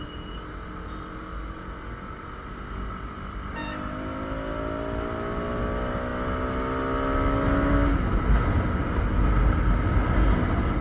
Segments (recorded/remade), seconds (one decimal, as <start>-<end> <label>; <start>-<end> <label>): 0.0-10.8 recorded